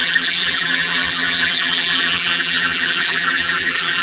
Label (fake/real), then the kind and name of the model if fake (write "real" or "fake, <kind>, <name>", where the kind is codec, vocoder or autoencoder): fake, vocoder, BigVGAN v2